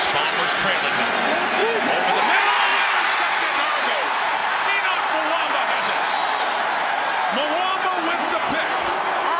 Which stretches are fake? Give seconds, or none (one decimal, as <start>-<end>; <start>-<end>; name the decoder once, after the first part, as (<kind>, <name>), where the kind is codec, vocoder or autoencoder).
none